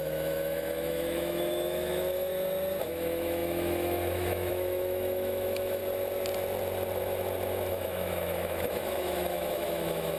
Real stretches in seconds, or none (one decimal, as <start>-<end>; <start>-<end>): 2.3-2.8; 5.8-7.7